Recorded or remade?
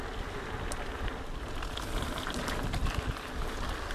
recorded